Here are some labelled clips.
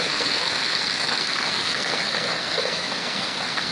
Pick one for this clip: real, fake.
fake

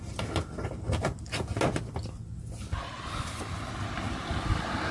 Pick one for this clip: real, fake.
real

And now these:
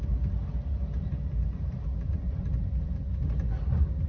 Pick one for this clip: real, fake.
real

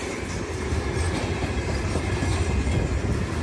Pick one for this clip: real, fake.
real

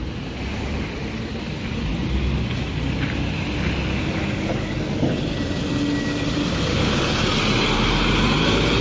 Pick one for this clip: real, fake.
real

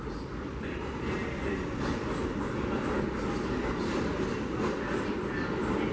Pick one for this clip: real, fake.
real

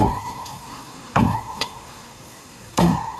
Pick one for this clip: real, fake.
fake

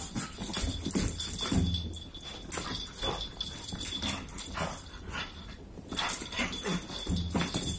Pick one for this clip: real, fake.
real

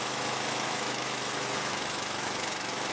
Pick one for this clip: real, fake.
fake